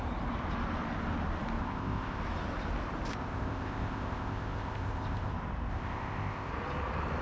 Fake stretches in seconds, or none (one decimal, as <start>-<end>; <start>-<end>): 1.6-2.2; 3.1-5.3; 5.7-6.5